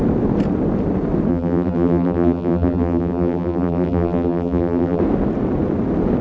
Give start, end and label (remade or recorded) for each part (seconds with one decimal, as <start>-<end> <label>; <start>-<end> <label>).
0.0-1.3 recorded; 1.3-5.0 remade; 5.0-6.2 recorded